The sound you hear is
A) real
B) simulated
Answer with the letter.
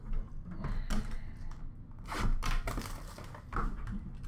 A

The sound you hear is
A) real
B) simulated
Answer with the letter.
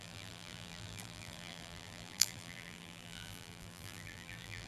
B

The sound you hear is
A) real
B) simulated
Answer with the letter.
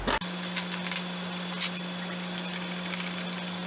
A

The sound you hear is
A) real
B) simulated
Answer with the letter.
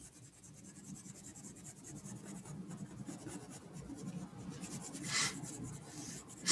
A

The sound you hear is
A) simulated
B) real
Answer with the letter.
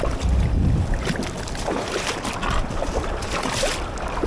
B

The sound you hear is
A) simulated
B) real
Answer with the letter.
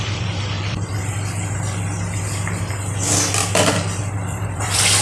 A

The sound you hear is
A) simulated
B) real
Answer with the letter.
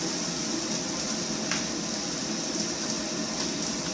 B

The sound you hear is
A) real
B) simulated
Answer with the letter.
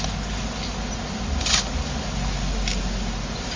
A